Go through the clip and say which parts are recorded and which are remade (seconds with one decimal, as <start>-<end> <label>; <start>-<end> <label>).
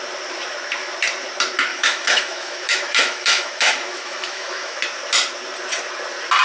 0.0-1.7 recorded; 1.7-4.8 remade; 4.8-6.4 recorded